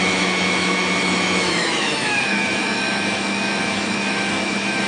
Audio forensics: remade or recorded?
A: remade